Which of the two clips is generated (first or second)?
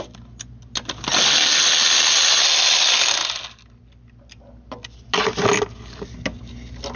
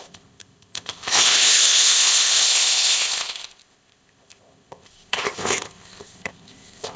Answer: second